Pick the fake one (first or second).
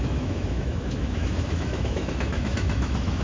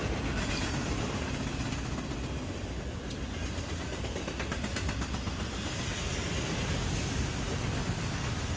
first